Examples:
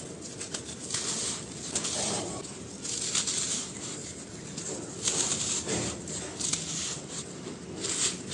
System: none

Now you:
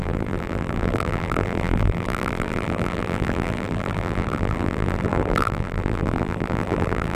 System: vocoder, BigVGAN v2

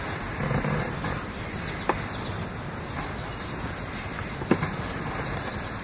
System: none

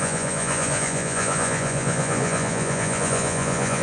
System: vocoder, Vocos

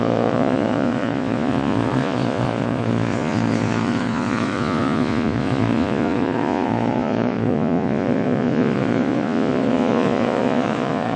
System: vocoder, Vocos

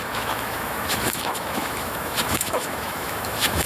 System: autoencoder, DAC-VAE